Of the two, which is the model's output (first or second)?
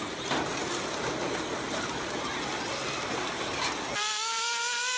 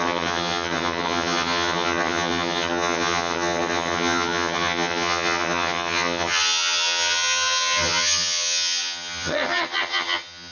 second